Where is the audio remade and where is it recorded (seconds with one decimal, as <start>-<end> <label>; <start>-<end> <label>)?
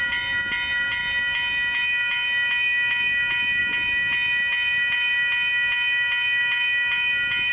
0.0-7.5 recorded